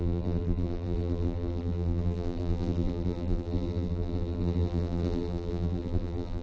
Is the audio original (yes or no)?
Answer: no